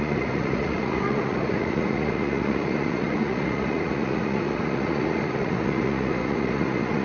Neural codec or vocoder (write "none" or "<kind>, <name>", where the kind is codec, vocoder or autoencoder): vocoder, Vocos